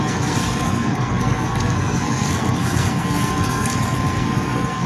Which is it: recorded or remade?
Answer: remade